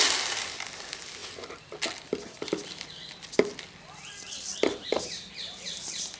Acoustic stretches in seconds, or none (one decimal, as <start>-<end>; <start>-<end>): 0.0-6.2